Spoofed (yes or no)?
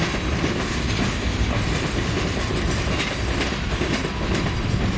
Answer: no